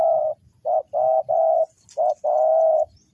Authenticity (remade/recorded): recorded